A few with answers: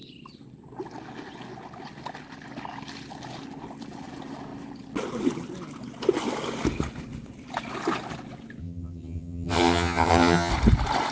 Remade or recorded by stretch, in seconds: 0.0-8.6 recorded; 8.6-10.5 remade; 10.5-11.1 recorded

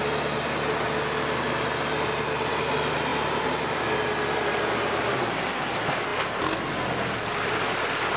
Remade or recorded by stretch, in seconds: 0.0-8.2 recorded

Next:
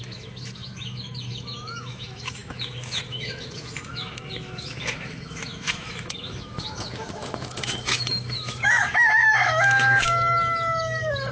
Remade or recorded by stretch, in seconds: 0.0-11.3 remade

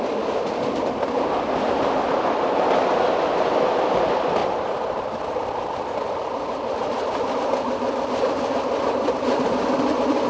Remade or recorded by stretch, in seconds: 0.0-10.3 recorded

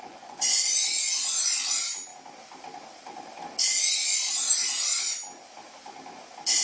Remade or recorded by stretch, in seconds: 0.0-0.6 remade; 0.6-6.6 recorded

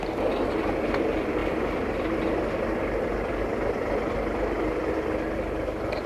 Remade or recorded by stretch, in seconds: 0.0-6.1 recorded

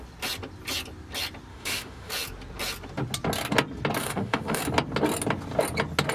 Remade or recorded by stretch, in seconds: 0.0-1.5 recorded; 1.5-2.1 remade; 2.1-4.0 recorded; 4.0-4.6 remade; 4.6-6.1 recorded